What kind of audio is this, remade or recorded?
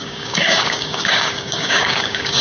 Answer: remade